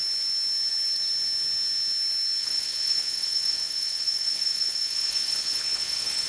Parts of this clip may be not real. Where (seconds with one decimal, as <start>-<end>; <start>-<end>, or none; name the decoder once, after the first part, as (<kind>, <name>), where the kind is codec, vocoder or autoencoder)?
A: 2.4-6.3 (vocoder, WaveNeXt)